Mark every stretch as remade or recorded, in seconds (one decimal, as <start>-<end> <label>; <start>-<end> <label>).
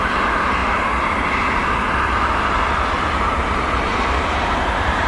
0.0-3.9 recorded; 3.9-5.1 remade